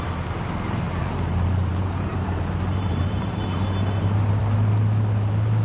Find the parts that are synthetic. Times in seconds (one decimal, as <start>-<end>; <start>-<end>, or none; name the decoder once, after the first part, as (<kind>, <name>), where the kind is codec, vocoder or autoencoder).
1.0-4.4 (vocoder, BigVGAN v2)